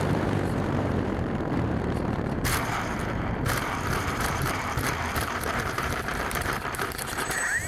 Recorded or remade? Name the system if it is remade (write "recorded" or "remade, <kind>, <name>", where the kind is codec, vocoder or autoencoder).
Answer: remade, vocoder, BigVGAN v2